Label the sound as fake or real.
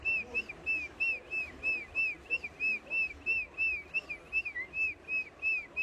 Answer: real